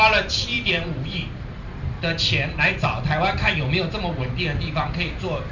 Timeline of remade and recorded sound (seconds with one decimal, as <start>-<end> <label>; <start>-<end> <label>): 0.0-0.5 recorded; 0.5-2.0 remade; 2.0-5.5 recorded